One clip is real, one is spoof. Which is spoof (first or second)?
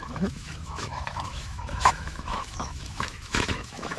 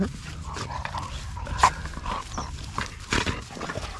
first